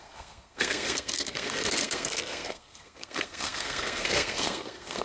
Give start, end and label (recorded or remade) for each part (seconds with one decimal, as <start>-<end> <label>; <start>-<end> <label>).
0.0-5.0 remade